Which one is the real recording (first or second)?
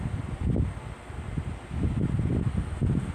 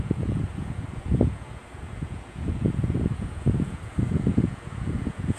first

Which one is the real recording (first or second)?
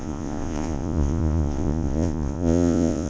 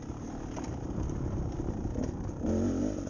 second